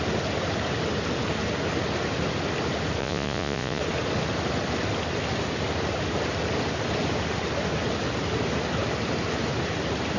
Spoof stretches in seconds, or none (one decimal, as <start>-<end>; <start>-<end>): 3.0-3.8